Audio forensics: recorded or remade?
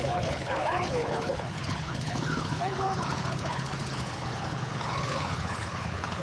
remade